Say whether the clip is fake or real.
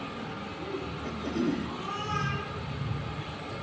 real